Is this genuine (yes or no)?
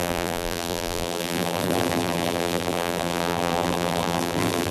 no